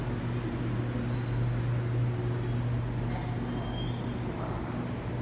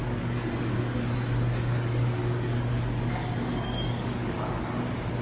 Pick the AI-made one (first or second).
second